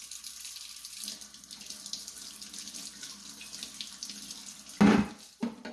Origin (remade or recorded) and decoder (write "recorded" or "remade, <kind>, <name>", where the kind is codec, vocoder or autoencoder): recorded